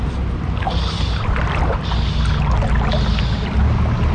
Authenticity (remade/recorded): recorded